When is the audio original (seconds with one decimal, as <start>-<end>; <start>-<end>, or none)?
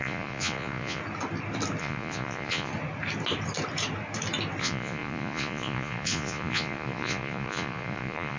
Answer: 1.0-1.8; 2.7-4.6